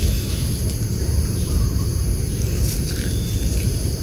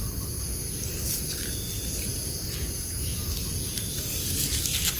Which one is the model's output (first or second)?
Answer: first